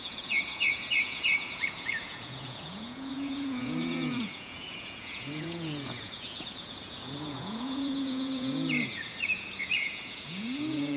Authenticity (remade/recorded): remade